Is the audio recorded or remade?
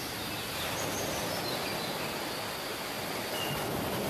recorded